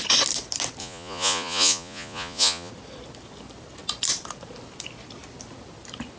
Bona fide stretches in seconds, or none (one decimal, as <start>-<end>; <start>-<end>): 0.0-0.8; 2.7-6.2